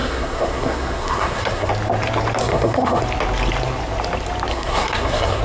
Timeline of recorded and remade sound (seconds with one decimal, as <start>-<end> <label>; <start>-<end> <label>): 0.0-1.7 remade; 1.7-2.4 recorded; 2.4-3.0 remade; 3.0-4.5 recorded; 4.5-5.4 remade